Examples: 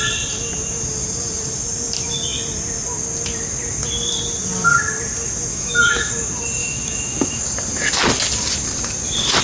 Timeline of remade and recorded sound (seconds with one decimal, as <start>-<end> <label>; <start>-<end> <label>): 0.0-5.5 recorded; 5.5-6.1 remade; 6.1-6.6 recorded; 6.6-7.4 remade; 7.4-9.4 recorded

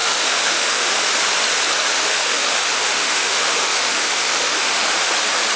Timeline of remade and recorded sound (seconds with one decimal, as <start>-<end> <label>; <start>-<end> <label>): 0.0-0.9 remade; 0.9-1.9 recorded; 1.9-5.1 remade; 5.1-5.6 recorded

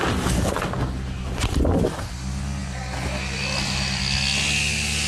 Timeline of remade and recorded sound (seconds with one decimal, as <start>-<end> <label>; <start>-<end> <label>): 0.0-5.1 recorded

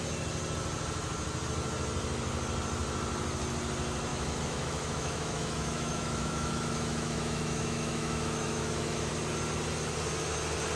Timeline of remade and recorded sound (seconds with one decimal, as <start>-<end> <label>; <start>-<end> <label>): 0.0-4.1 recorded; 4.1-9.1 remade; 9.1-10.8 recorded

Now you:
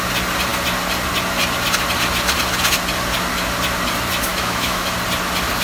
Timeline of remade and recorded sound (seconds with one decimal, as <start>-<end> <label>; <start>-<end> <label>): 0.0-4.3 recorded; 4.3-4.9 remade; 4.9-5.6 recorded